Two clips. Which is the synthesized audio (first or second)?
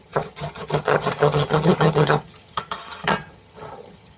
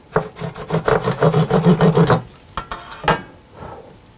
first